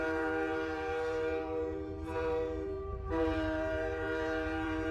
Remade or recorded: remade